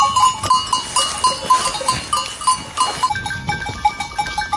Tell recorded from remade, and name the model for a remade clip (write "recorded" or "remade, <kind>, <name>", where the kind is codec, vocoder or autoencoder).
recorded